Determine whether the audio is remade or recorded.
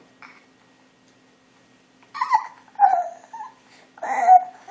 recorded